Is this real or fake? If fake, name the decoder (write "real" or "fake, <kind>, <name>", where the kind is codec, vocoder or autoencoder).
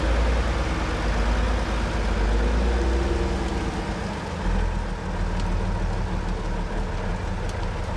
real